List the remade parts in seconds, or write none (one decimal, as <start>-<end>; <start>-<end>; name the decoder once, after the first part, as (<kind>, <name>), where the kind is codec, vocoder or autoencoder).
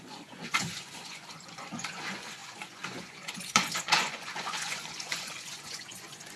0.0-6.4 (vocoder, Vocos)